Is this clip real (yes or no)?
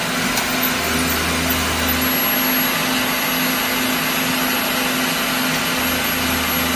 yes